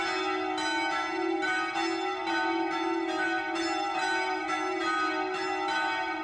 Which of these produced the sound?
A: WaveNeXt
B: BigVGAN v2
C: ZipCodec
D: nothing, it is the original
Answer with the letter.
D